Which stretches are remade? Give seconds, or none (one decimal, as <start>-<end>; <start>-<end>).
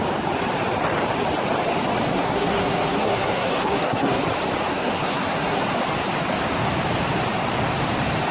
2.1-4.2; 4.7-5.6